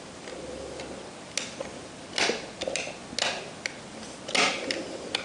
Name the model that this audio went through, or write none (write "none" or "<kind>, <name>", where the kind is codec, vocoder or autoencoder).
none